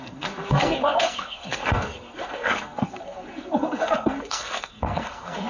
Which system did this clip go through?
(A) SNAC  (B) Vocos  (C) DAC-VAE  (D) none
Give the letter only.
A